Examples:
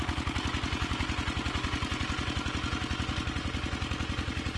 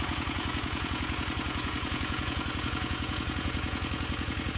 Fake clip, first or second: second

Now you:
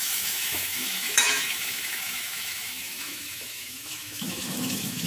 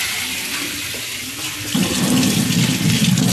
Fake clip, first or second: first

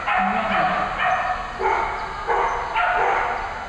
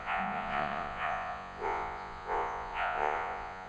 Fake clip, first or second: second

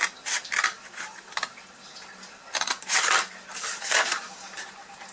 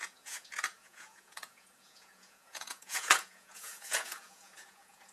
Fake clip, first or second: second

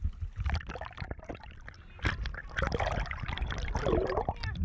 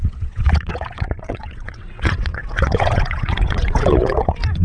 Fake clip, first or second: second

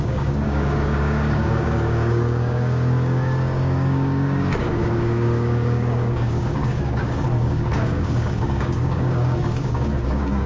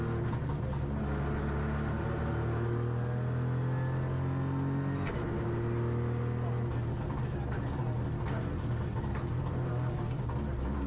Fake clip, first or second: first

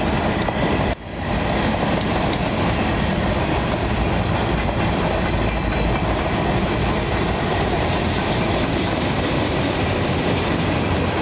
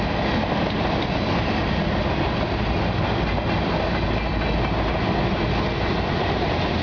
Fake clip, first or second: first